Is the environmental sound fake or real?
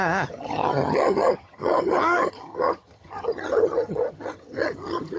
fake